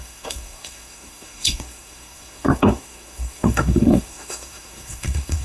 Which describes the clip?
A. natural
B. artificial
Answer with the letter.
B